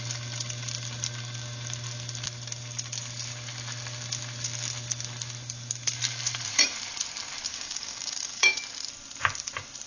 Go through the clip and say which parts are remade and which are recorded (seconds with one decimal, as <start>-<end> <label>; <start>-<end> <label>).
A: 0.0-7.5 recorded; 7.5-8.6 remade; 8.6-9.9 recorded